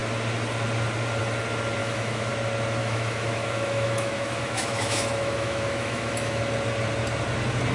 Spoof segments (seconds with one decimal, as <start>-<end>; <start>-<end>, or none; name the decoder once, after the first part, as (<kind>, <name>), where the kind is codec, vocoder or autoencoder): 1.8-2.3 (autoencoder, DAC-VAE); 2.8-6.4

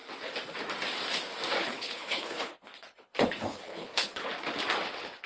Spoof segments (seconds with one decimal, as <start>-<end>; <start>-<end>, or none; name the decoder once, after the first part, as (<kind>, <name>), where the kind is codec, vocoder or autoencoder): 1.6-4.3 (codec, HILCodec)

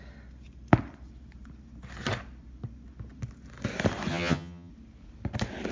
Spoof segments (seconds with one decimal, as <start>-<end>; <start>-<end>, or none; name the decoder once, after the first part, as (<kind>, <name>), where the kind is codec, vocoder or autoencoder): 4.1-4.7 (vocoder, HiFi-GAN)

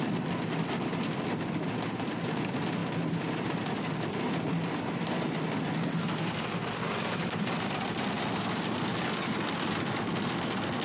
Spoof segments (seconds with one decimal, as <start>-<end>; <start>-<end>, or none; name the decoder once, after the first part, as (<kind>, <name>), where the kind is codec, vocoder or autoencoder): none

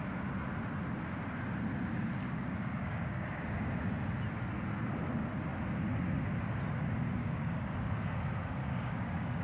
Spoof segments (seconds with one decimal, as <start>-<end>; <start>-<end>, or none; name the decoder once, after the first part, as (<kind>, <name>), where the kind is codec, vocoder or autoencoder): 2.2-3.7 (codec, DAC); 7.2-7.9; 8.6-9.4

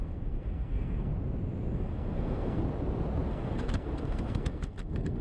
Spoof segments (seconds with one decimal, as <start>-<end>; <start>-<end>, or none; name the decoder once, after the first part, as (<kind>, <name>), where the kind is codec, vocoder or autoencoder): 0.0-1.1 (codec, SNAC); 1.7-2.6; 3.3-5.2